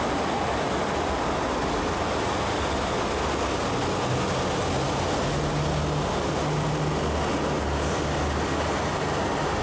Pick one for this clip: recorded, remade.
recorded